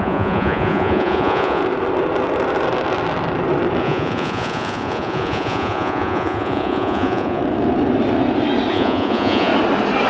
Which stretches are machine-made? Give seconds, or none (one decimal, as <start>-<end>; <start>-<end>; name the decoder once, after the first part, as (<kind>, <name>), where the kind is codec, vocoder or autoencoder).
0.0-1.6 (vocoder, Vocos); 3.8-7.4; 8.7-9.5